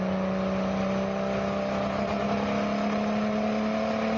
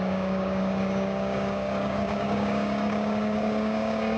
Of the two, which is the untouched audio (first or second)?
first